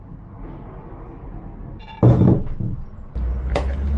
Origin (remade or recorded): recorded